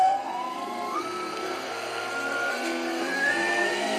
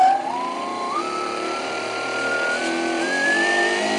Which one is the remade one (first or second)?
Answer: first